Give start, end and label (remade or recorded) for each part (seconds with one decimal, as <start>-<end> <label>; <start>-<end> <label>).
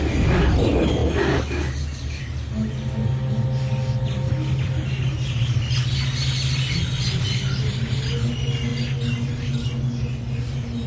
0.0-10.9 recorded